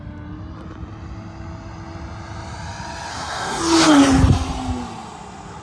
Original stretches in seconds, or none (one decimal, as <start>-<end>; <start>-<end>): 0.0-3.1; 3.6-5.6